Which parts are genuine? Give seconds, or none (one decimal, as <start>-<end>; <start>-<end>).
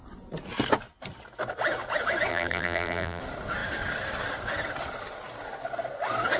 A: 0.0-2.3; 3.2-6.4